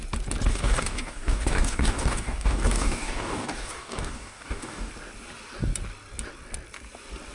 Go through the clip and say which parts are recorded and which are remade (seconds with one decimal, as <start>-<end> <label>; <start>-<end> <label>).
0.0-0.5 recorded; 0.5-4.9 remade; 4.9-7.3 recorded